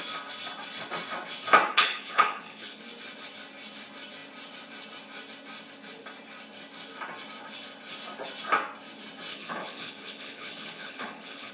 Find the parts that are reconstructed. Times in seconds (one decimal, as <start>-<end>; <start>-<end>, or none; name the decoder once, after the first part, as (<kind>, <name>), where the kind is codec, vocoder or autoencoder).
1.7-2.8 (codec, HILCodec); 9.3-11.5